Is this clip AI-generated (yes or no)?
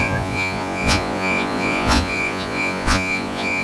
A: yes